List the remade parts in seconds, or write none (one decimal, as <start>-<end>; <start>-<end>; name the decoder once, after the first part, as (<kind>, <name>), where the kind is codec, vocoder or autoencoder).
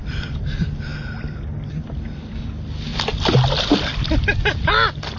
none